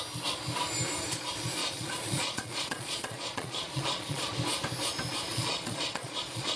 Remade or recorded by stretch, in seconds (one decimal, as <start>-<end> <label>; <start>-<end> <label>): 0.0-1.6 recorded; 1.6-4.3 remade; 4.3-5.3 recorded; 5.3-6.6 remade